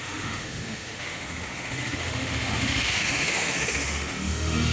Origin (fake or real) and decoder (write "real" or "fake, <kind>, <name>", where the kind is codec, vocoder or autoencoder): fake, autoencoder, DAC-VAE